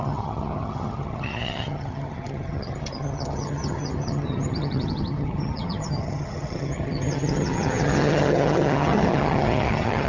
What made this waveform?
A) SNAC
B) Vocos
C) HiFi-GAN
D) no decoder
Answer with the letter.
C